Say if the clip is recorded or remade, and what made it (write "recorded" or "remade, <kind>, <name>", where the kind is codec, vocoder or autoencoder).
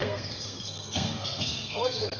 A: remade, codec, SNAC